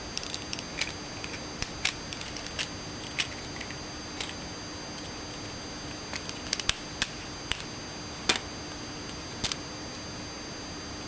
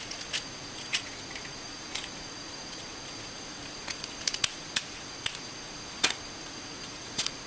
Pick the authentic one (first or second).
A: first